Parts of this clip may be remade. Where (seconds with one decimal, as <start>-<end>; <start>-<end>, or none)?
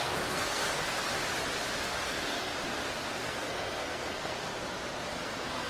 0.0-1.1; 1.8-2.5; 3.1-4.5; 5.1-5.7